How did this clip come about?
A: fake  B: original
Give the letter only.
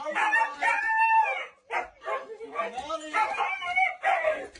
B